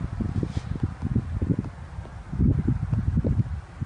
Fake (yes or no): no